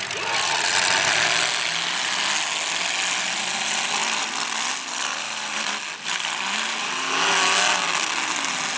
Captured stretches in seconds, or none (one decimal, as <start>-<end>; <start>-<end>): 0.0-8.8